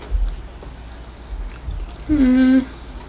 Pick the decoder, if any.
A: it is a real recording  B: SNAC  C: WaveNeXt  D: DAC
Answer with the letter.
A